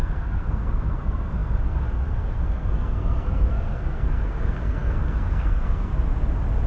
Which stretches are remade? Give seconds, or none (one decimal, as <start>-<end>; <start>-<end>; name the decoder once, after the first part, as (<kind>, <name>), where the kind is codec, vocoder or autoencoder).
0.0-5.9 (codec, SNAC)